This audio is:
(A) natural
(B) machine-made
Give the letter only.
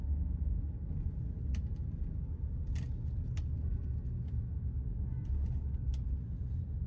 A